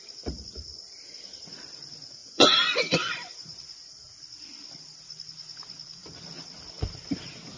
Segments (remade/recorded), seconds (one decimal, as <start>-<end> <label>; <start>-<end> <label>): 0.0-2.2 recorded; 2.2-3.3 remade; 3.3-7.6 recorded